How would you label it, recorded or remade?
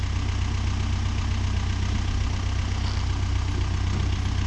recorded